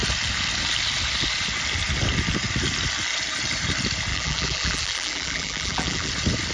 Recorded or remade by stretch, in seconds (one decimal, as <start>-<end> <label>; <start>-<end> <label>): 0.0-4.1 recorded; 4.1-6.1 remade; 6.1-6.5 recorded